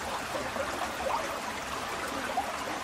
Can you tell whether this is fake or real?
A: real